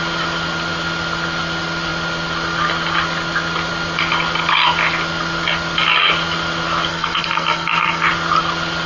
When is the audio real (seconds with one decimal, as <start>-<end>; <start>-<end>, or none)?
0.0-6.9; 8.1-8.9